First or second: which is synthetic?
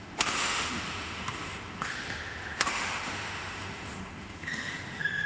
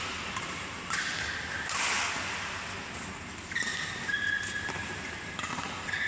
first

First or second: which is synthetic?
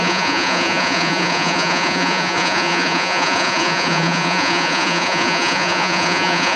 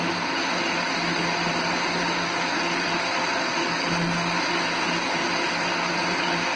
first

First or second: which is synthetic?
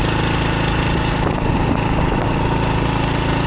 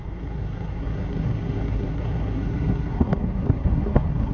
second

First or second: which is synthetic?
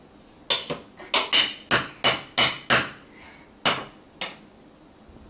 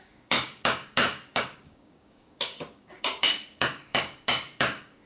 second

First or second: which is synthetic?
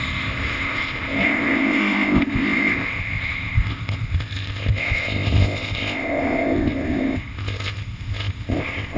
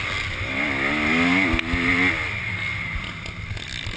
first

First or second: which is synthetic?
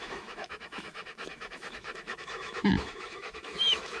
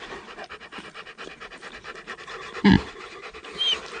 first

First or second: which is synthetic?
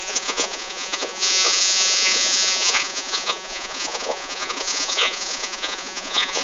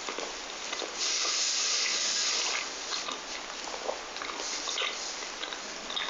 first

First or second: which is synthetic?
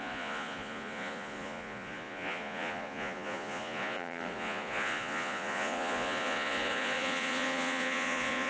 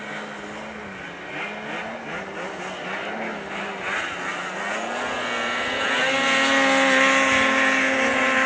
first